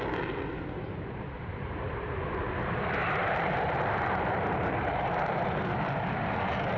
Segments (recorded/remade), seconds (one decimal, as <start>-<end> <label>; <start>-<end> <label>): 0.0-1.5 recorded; 1.5-2.5 remade; 2.5-3.2 recorded; 3.2-5.9 remade; 5.9-6.8 recorded